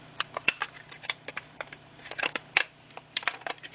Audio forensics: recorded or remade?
remade